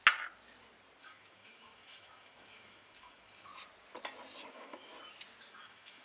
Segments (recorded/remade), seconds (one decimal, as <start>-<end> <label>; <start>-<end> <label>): 0.0-1.0 recorded; 1.0-3.5 remade; 3.5-4.5 recorded; 4.5-4.9 remade; 4.9-5.5 recorded; 5.5-6.0 remade